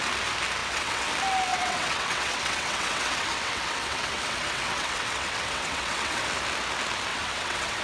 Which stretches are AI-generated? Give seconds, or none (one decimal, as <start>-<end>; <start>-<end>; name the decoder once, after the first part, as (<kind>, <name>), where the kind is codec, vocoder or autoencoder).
0.6-1.1 (vocoder, WaveNeXt); 1.5-6.2; 7.1-7.8